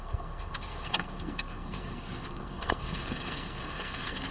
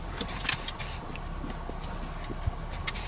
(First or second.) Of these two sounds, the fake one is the first